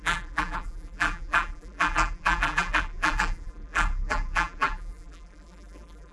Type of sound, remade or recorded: remade